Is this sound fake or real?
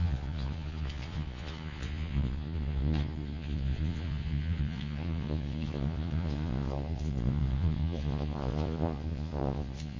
fake